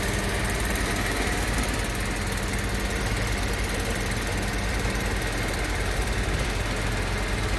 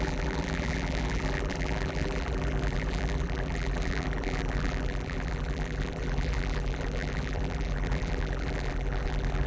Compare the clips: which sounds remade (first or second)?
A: second